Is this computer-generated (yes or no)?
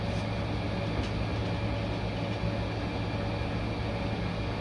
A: no